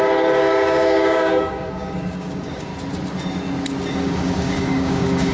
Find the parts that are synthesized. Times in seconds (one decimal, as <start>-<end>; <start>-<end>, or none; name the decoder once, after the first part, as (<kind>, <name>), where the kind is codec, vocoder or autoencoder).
0.0-2.7 (codec, DAC); 3.9-5.3